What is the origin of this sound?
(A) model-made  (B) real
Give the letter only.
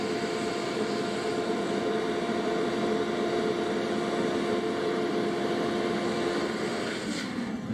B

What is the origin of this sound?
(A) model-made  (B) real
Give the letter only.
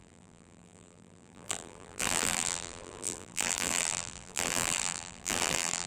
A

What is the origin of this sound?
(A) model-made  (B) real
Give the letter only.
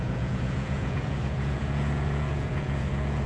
A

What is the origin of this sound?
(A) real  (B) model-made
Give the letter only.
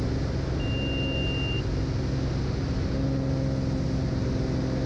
A